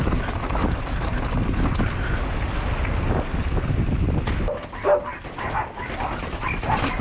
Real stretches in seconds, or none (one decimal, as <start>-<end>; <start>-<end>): 0.0-0.6; 1.6-7.0